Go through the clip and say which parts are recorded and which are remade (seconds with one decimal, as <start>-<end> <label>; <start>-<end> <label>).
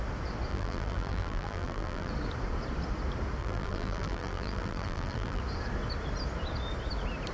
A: 0.0-0.5 recorded; 0.5-2.1 remade; 2.1-3.4 recorded; 3.4-5.4 remade; 5.4-7.3 recorded